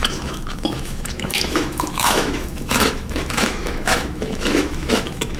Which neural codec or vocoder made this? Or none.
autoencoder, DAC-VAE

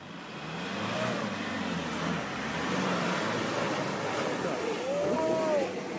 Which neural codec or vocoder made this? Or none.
none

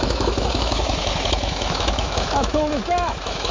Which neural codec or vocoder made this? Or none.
autoencoder, DAC-VAE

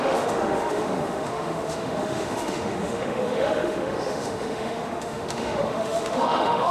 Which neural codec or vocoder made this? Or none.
autoencoder, DAC-VAE